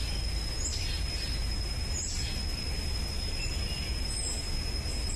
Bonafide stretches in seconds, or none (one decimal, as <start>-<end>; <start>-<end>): 0.0-5.2